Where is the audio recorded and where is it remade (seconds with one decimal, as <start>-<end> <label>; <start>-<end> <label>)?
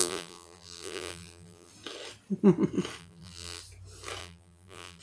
0.0-1.7 remade; 1.7-3.0 recorded; 3.0-3.6 remade; 3.6-4.2 recorded; 4.2-5.0 remade